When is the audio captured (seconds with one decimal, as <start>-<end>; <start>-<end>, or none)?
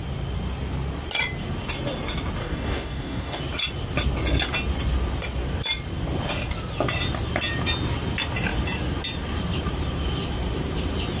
0.0-2.4; 3.4-11.2